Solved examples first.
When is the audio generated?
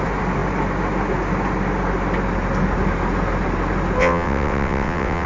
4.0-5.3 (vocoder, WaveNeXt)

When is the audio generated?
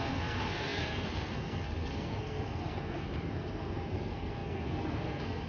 0.0-5.5 (codec, SNAC)